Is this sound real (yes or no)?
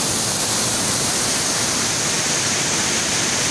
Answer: yes